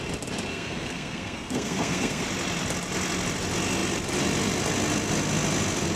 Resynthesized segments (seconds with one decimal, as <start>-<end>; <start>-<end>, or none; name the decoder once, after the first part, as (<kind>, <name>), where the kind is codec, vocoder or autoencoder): 0.5-2.2 (codec, SNAC)